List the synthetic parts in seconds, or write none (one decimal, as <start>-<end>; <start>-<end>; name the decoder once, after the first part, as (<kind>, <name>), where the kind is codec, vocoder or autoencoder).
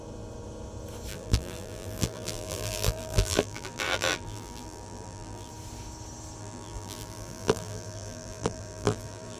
1.1-5.5 (vocoder, BigVGAN v2); 6.4-9.4